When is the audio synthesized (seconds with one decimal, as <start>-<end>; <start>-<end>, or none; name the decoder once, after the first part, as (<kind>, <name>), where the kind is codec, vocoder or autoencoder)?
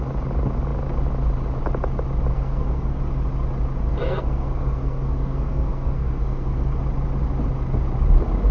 2.3-3.0 (codec, SNAC); 3.8-6.8